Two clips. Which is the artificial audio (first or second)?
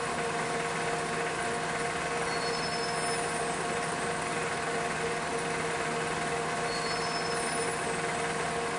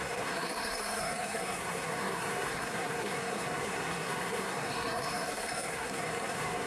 second